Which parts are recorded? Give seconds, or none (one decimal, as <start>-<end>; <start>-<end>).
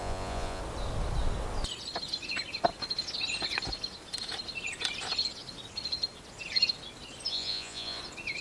0.6-7.3; 8.0-8.4